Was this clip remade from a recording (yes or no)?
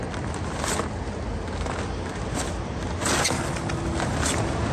no